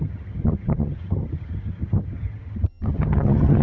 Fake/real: fake